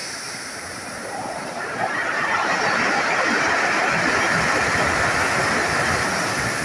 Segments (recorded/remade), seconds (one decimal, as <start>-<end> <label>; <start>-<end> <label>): 0.0-4.0 remade; 4.0-6.6 recorded